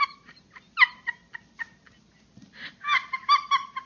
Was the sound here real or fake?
real